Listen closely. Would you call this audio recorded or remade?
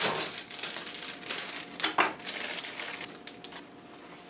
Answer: recorded